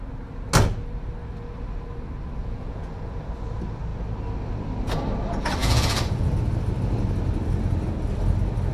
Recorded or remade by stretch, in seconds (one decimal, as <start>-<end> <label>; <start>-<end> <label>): 0.0-2.4 recorded; 2.4-3.3 remade; 3.3-5.6 recorded; 5.6-6.3 remade; 6.3-8.7 recorded